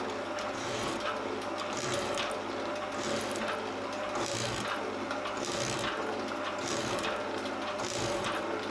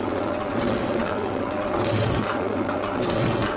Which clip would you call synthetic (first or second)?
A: second